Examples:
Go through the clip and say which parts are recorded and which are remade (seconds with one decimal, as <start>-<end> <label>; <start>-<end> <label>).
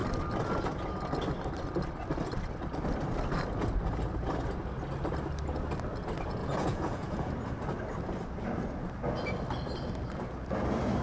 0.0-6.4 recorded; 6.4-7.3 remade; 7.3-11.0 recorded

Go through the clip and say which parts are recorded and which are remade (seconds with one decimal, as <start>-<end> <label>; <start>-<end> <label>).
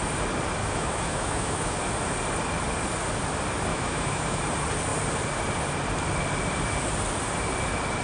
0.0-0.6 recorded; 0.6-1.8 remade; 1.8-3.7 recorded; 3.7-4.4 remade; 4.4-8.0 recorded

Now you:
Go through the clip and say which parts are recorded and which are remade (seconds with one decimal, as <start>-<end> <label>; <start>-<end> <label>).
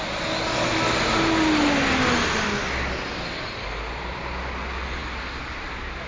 0.0-6.1 recorded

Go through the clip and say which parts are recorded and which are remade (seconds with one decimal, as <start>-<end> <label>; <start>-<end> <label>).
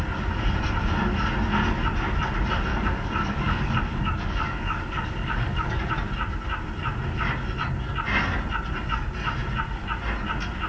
0.0-2.7 recorded; 2.7-5.9 remade; 5.9-10.7 recorded